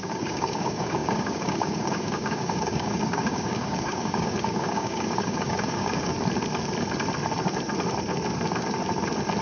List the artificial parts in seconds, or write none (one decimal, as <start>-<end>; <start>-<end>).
0.0-6.1